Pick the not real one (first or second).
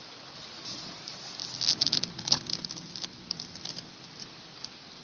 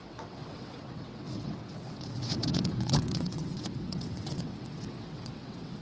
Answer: second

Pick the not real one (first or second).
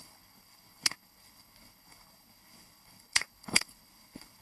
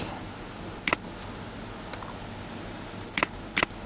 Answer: first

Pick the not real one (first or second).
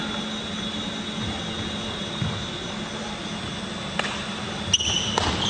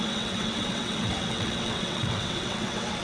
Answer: second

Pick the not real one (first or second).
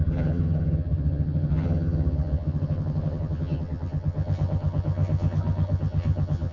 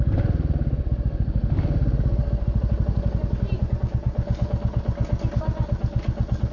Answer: first